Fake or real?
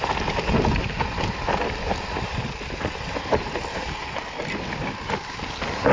real